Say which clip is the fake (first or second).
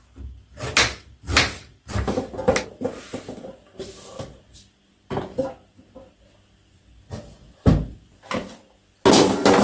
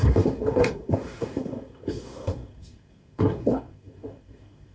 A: second